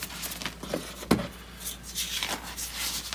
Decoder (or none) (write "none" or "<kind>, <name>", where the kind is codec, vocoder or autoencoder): none